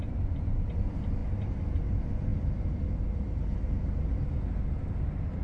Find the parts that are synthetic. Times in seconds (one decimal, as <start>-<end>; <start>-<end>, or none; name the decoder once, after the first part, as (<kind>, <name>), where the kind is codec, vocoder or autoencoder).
none